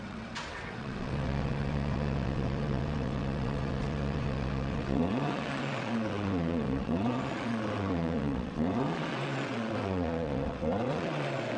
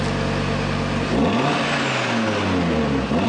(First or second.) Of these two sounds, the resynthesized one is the first